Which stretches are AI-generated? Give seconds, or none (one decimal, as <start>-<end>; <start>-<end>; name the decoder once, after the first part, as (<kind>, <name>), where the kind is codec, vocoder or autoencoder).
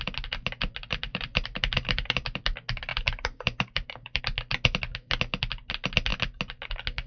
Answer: 1.1-2.4 (vocoder, BigVGAN v2); 2.9-4.2